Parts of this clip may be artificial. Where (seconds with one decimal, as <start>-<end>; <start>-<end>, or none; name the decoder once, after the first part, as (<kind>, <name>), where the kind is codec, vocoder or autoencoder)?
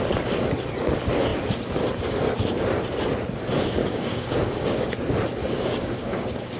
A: 3.8-4.9 (codec, DAC); 5.4-6.6